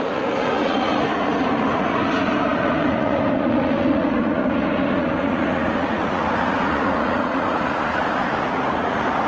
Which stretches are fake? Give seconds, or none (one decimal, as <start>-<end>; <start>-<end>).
0.0-9.3